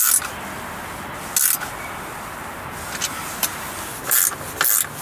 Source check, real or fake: real